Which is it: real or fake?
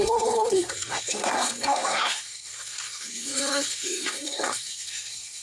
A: fake